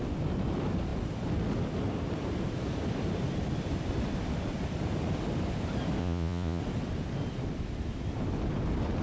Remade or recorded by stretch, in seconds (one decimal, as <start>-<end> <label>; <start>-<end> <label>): 0.0-6.0 recorded; 6.0-6.6 remade; 6.6-9.0 recorded